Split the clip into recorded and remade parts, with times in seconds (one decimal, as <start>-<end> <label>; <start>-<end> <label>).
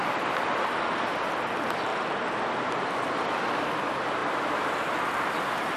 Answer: 0.0-5.8 recorded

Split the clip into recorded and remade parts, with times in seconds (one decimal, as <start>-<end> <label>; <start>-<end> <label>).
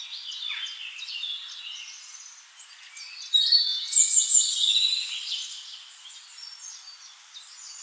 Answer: 0.0-7.8 recorded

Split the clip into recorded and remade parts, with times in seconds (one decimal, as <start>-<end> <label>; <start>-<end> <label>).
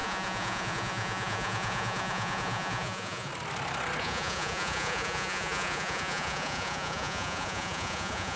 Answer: 0.0-3.3 remade; 3.3-4.0 recorded; 4.0-8.4 remade